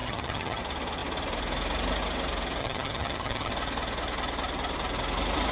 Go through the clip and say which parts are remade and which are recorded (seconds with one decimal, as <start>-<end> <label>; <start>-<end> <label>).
0.0-0.6 remade; 0.6-2.6 recorded; 2.6-3.5 remade; 3.5-5.5 recorded